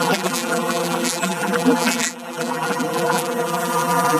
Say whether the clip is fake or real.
fake